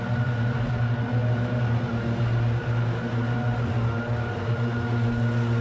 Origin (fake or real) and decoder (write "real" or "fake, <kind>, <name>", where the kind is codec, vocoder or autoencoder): real